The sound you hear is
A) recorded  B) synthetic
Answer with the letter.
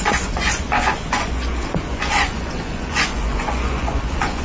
B